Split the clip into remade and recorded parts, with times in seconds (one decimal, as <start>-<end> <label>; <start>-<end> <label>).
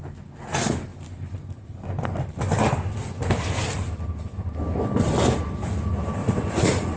0.0-6.2 recorded; 6.2-7.0 remade